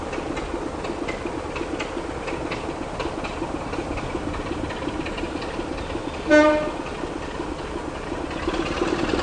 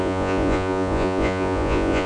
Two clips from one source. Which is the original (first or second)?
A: first